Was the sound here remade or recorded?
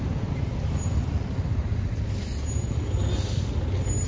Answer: recorded